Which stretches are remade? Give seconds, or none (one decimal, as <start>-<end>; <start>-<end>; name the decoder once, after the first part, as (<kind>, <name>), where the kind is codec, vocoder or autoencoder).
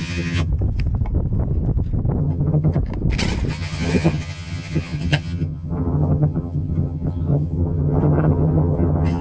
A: 0.0-0.5 (vocoder, HiFi-GAN); 2.2-2.8; 3.5-9.2